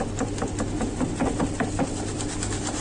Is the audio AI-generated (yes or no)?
no